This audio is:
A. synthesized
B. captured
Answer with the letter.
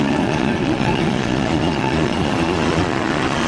A